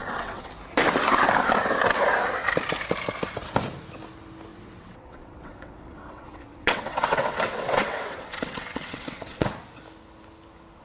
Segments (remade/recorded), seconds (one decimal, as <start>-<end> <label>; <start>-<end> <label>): 0.0-0.5 remade; 0.5-4.5 recorded; 4.5-9.5 remade; 9.5-10.8 recorded